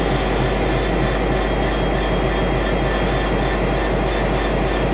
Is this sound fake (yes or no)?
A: no